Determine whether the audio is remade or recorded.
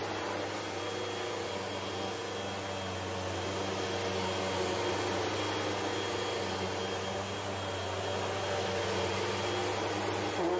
recorded